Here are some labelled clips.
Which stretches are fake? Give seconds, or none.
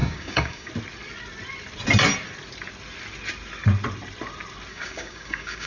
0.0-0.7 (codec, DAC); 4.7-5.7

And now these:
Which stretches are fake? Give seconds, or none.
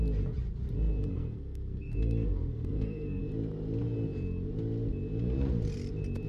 1.1-3.2 (codec, SNAC)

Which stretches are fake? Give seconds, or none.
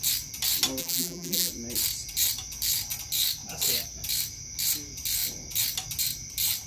0.8-1.5 (vocoder, BigVGAN v2)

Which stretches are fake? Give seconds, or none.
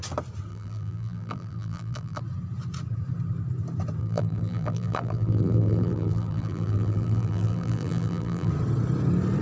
0.5-2.2 (vocoder, BigVGAN v2); 4.0-8.5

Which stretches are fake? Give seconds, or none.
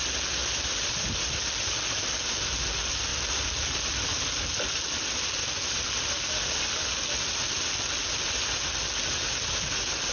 none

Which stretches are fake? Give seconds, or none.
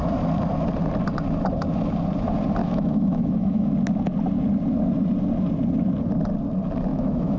2.6-3.7 (autoencoder, DAC-VAE); 6.9-7.4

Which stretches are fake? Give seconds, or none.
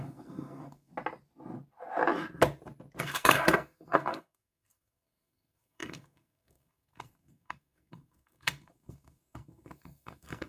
0.0-0.9 (codec, SNAC); 3.0-10.5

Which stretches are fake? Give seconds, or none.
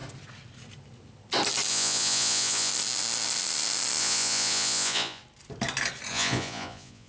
1.7-2.7 (vocoder, Vocos); 4.0-5.2; 6.1-7.1